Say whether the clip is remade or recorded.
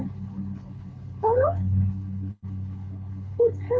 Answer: remade